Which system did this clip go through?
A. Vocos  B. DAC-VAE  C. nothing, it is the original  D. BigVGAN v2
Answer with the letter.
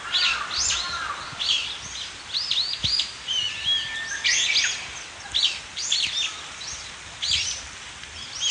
C